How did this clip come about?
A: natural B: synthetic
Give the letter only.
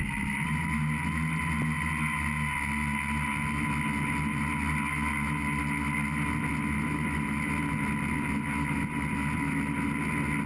A